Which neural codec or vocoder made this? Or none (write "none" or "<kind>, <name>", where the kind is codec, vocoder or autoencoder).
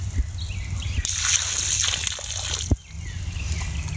none